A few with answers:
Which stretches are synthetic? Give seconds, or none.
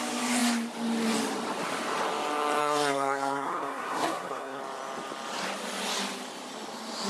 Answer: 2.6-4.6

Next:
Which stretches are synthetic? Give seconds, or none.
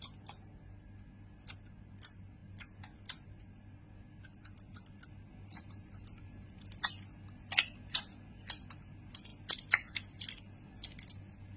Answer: none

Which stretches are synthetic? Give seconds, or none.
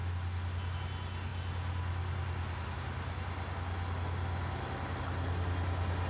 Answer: none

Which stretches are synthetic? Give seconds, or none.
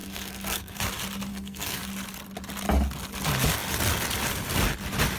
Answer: 0.0-0.8; 1.3-1.8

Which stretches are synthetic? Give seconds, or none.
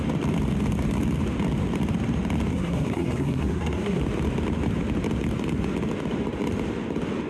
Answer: 2.5-4.0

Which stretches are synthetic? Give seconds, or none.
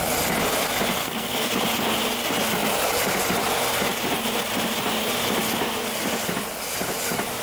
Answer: 1.0-1.5